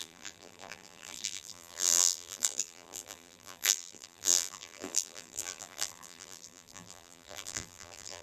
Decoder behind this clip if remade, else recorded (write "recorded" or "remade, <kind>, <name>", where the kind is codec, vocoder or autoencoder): remade, vocoder, BigVGAN v2